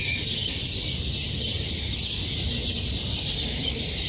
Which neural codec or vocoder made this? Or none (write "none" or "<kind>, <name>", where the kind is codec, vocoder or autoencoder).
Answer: none